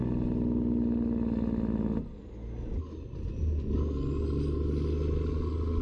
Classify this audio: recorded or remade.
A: recorded